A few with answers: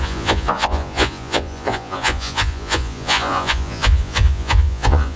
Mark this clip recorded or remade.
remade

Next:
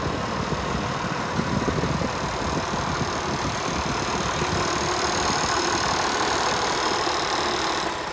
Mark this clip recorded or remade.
recorded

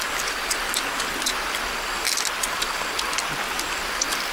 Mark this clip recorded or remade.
recorded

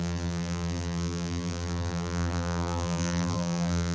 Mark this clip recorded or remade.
remade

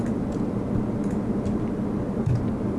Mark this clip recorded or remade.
recorded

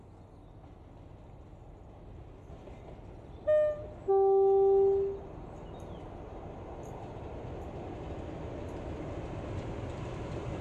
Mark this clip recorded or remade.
recorded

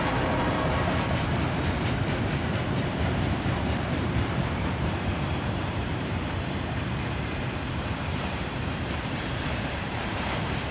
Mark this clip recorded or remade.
remade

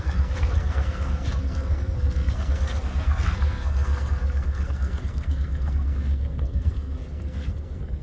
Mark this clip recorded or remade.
remade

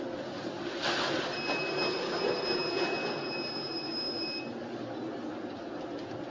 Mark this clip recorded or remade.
recorded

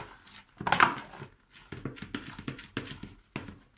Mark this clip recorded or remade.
recorded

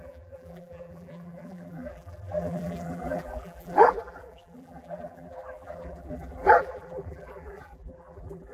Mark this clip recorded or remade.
remade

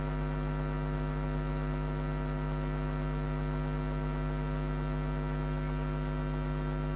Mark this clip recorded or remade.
recorded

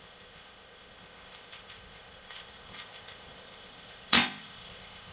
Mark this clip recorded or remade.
remade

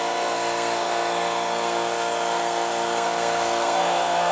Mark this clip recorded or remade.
remade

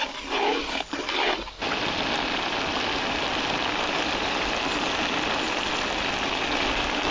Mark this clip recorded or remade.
recorded